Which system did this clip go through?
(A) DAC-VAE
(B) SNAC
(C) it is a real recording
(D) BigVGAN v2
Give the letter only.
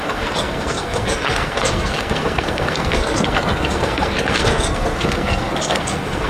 B